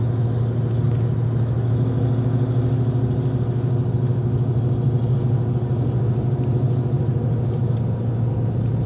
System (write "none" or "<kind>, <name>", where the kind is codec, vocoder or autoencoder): none